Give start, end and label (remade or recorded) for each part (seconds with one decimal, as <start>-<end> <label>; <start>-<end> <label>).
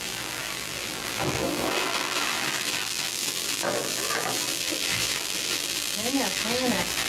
0.0-7.1 remade